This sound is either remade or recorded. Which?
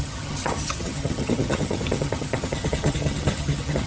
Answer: remade